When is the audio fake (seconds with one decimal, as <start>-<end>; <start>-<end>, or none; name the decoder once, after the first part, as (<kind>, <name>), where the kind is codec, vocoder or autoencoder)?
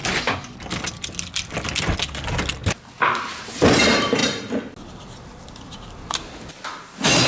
3.1-4.2 (vocoder, BigVGAN v2)